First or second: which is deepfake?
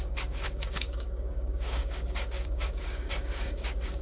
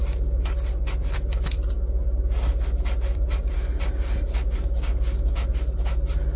first